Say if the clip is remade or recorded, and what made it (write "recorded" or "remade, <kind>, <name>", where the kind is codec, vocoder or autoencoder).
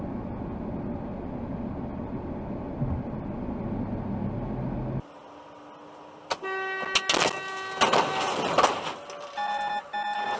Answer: recorded